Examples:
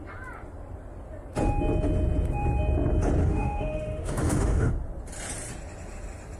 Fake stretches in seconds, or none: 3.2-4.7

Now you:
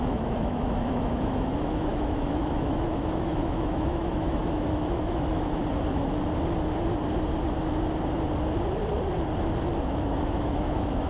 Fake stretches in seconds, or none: 0.0-5.6; 9.9-11.1

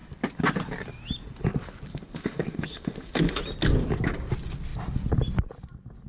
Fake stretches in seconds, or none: 1.9-3.4

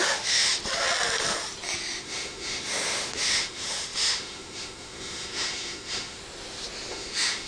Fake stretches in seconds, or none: 0.0-0.5; 2.0-6.2; 6.9-7.5